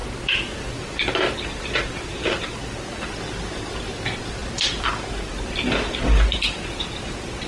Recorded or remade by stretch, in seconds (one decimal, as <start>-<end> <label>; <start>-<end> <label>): 0.0-7.5 remade